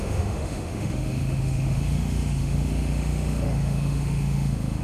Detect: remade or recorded remade